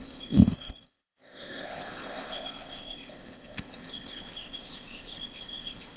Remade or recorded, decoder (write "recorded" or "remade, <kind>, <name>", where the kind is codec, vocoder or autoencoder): remade, codec, ZipCodec